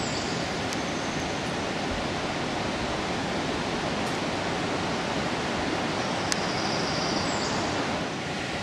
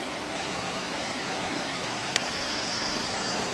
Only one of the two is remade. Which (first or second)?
second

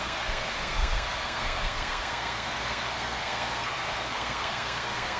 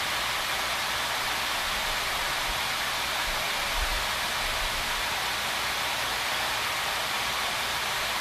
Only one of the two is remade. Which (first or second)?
first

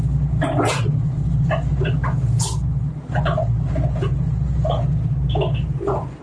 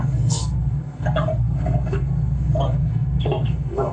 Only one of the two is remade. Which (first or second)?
second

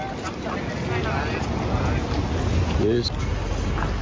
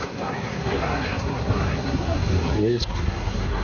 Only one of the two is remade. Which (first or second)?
second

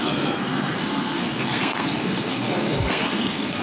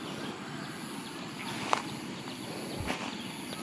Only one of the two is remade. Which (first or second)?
first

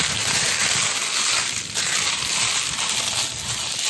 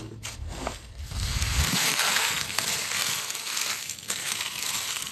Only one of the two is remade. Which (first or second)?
second